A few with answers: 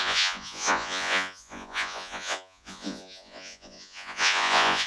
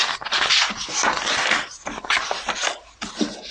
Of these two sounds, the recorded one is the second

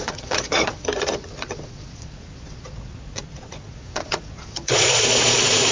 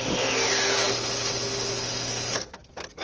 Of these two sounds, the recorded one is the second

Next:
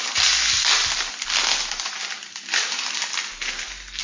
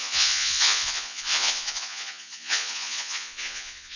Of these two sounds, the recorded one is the first